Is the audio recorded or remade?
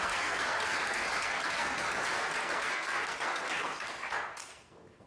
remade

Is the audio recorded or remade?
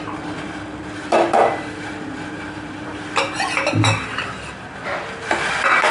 remade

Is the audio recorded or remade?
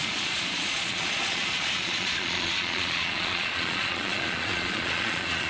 remade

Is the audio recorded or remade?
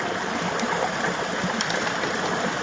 recorded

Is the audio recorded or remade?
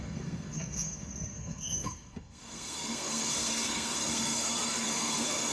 remade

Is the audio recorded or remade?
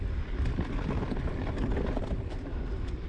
recorded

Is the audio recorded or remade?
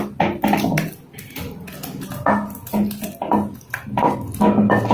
recorded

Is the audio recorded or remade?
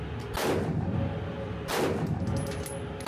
recorded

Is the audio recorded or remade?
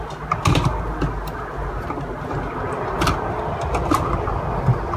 recorded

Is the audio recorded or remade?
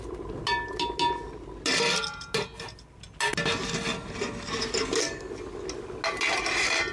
recorded